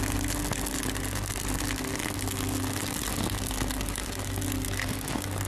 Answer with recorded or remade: recorded